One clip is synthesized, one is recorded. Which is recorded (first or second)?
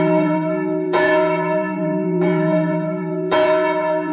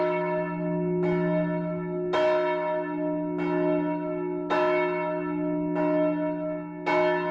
second